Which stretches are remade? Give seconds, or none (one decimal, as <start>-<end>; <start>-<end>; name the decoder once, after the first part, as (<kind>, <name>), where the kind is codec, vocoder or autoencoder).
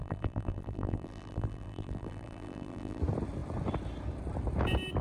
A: 0.0-3.0 (vocoder, BigVGAN v2)